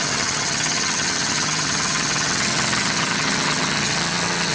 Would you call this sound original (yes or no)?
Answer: no